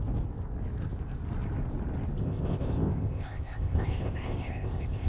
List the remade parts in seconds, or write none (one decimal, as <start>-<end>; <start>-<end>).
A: 2.2-5.1